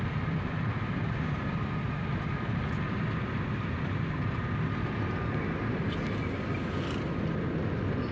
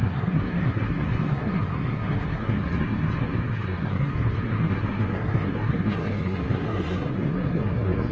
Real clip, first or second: first